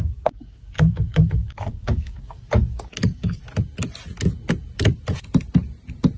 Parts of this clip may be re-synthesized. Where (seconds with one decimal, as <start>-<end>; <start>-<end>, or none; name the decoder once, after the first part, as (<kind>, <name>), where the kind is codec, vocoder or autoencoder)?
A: 0.0-3.4 (codec, DAC)